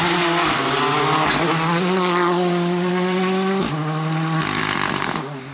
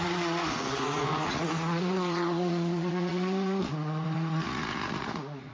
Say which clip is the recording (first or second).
first